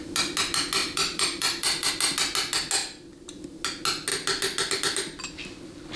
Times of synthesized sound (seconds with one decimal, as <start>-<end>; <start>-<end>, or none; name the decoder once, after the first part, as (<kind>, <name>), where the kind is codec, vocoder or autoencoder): 0.8-1.9 (vocoder, BigVGAN v2); 2.8-3.3